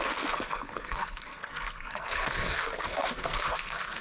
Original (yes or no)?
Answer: no